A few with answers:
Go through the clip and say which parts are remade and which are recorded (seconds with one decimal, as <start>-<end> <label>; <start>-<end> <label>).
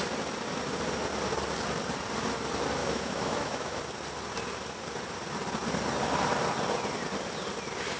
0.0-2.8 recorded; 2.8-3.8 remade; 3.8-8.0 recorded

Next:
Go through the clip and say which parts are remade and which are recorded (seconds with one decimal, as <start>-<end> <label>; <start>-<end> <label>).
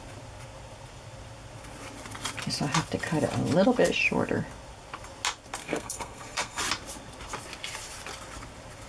0.0-5.6 recorded; 5.6-6.6 remade; 6.6-8.9 recorded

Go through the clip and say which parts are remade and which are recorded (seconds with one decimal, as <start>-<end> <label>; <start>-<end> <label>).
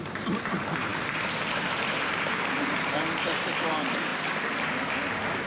0.0-5.5 recorded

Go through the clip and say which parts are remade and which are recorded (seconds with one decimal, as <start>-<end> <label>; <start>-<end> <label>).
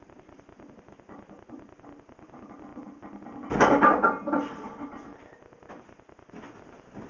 0.0-7.1 recorded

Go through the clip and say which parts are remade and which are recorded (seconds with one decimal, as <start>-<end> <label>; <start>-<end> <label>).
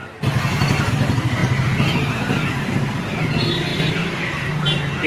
0.0-3.7 recorded; 3.7-4.5 remade; 4.5-5.1 recorded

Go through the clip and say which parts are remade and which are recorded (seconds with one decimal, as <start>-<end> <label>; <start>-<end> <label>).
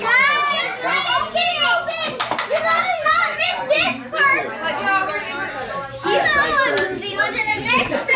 0.0-2.9 recorded; 2.9-3.6 remade; 3.6-7.1 recorded; 7.1-8.2 remade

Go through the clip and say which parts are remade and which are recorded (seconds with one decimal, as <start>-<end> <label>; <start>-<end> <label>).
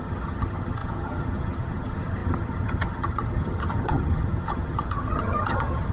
0.0-5.9 remade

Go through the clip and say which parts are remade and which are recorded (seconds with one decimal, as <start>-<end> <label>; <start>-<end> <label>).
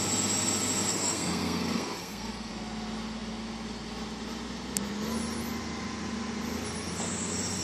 0.0-0.9 recorded; 0.9-2.5 remade; 2.5-7.6 recorded